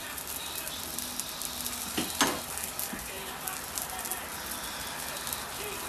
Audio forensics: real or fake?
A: real